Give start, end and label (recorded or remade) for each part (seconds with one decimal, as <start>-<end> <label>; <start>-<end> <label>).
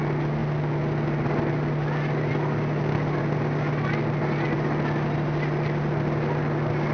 0.0-6.9 recorded